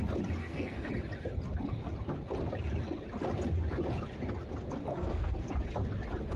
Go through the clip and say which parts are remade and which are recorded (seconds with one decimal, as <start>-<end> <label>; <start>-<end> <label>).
0.0-0.4 recorded; 0.4-0.9 remade; 0.9-4.9 recorded; 4.9-5.5 remade; 5.5-6.4 recorded